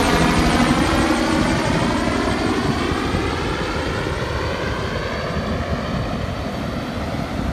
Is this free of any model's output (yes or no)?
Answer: yes